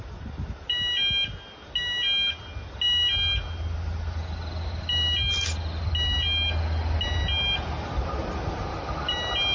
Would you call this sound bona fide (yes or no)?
yes